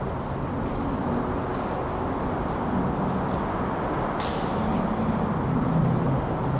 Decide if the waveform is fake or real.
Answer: real